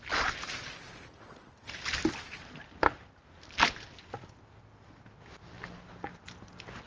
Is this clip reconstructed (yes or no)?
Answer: no